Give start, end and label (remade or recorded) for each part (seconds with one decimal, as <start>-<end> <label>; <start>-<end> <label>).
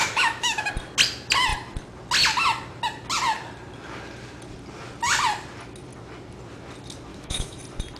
0.0-0.7 remade; 0.7-7.1 recorded; 7.1-7.6 remade; 7.6-8.0 recorded